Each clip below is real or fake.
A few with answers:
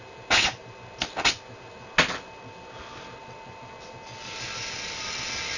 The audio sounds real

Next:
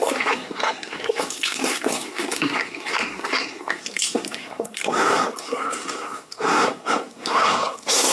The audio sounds fake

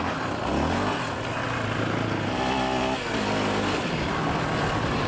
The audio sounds real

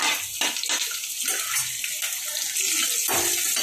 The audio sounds real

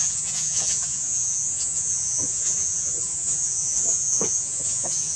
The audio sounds fake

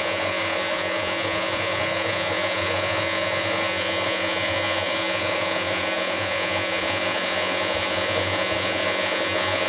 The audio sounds fake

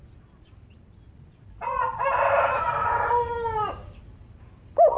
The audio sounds real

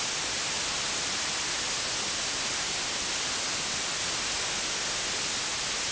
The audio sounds real